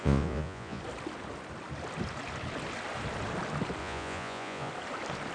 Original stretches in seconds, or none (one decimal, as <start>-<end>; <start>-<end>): 0.8-3.8; 4.7-5.3